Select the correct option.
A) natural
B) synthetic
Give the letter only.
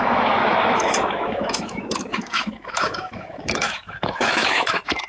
B